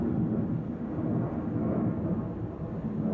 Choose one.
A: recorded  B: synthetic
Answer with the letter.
A